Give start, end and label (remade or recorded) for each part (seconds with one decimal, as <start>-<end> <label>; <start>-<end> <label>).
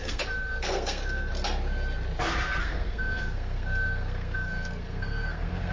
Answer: 0.0-1.3 remade; 1.3-2.6 recorded; 2.6-5.7 remade